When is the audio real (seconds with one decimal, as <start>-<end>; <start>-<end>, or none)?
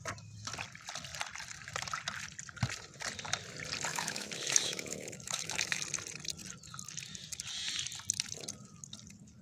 0.0-3.9; 5.8-9.4